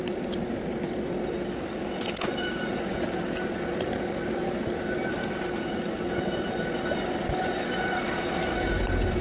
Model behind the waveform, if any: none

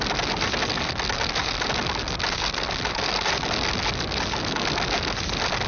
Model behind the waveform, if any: none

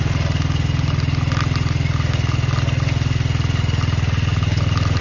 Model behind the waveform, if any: none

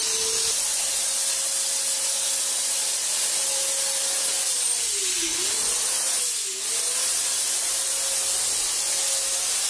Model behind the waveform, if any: none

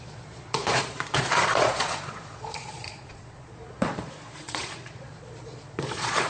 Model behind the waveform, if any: vocoder, Vocos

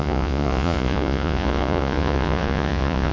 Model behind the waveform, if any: vocoder, Vocos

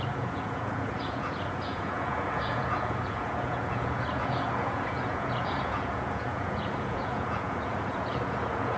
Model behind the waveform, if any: vocoder, Vocos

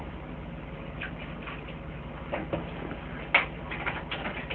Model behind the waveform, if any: none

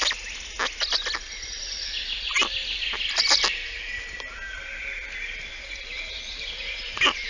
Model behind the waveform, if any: none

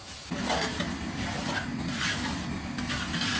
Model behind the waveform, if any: none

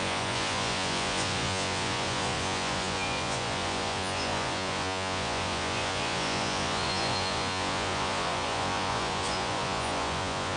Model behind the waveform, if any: vocoder, Vocos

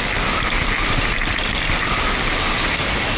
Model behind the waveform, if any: none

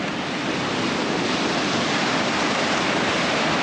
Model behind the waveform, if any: none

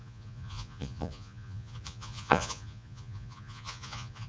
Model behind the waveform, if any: vocoder, Vocos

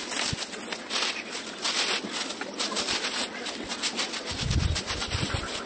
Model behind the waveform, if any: none